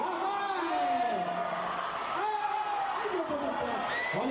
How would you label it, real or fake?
real